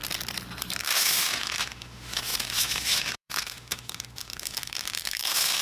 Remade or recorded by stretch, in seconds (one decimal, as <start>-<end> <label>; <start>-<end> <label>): 0.0-0.8 recorded; 0.8-5.6 remade